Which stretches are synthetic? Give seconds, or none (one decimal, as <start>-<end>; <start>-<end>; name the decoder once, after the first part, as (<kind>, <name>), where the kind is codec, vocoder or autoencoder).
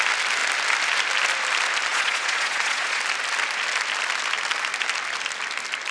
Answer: 1.9-3.0 (vocoder, Vocos)